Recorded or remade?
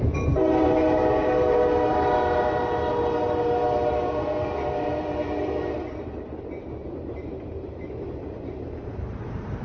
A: remade